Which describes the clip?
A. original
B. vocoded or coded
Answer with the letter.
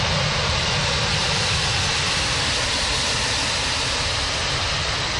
A